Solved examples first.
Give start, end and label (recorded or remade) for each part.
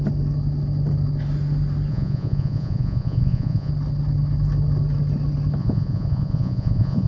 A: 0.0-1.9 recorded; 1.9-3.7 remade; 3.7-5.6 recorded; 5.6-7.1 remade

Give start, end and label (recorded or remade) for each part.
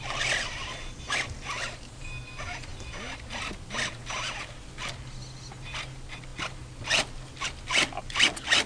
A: 0.0-8.7 recorded